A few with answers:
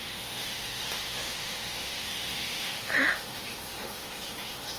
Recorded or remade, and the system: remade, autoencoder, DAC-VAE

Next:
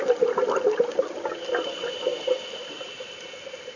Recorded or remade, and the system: recorded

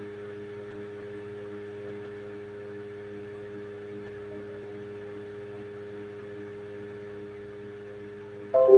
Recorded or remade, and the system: recorded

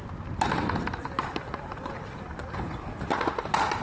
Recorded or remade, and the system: recorded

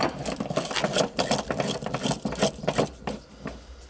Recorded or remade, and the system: recorded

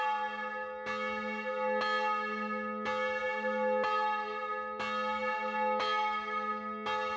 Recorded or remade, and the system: recorded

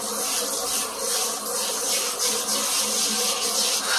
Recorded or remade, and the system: recorded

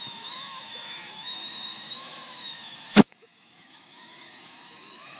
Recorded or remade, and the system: remade, autoencoder, DAC-VAE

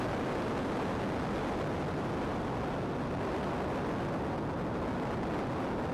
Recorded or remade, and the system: recorded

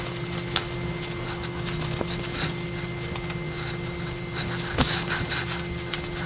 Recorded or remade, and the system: recorded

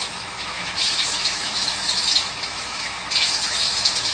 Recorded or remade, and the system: remade, autoencoder, DAC-VAE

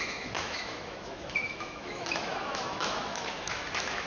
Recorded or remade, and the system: remade, autoencoder, DAC-VAE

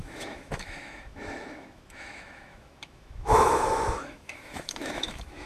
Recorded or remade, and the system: remade, autoencoder, DAC-VAE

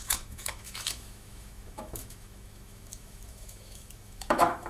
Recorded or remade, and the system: remade, autoencoder, DAC-VAE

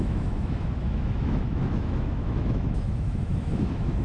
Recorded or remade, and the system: remade, autoencoder, DAC-VAE